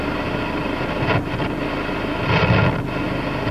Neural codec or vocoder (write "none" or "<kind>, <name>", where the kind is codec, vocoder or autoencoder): none